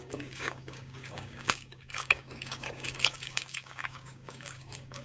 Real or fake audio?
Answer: fake